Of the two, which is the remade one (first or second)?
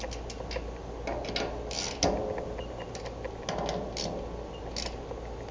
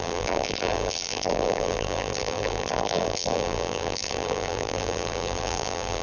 second